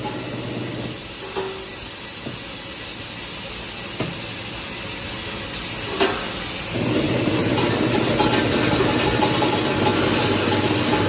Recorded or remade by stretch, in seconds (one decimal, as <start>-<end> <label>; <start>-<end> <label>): 0.0-11.1 recorded

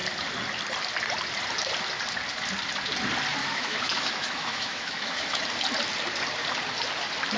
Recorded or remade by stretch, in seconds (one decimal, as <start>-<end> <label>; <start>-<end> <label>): 0.0-3.4 recorded; 3.4-5.4 remade; 5.4-7.4 recorded

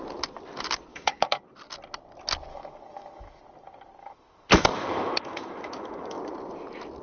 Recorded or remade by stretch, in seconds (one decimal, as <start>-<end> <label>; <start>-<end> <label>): 0.0-0.9 recorded; 0.9-1.4 remade; 1.4-2.5 recorded; 2.5-3.4 remade; 3.4-4.0 recorded; 4.0-6.2 remade; 6.2-7.0 recorded

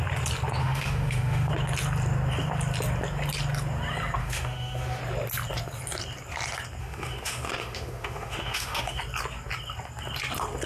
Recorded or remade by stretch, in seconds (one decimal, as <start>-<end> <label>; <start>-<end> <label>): 0.0-0.6 recorded; 0.6-1.5 remade; 1.5-4.2 recorded; 4.2-5.0 remade; 5.0-6.8 recorded; 6.8-9.0 remade; 9.0-10.7 recorded

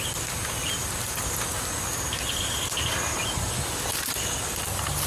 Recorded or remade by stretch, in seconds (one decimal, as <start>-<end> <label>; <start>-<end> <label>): 0.0-5.1 recorded

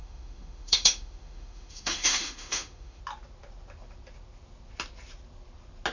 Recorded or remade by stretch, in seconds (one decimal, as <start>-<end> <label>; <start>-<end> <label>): 0.0-3.0 remade; 3.0-5.9 recorded

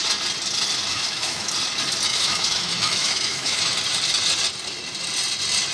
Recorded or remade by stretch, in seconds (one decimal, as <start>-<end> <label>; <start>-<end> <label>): 0.0-0.9 recorded; 0.9-1.5 remade; 1.5-2.1 recorded; 2.1-3.6 remade; 3.6-5.7 recorded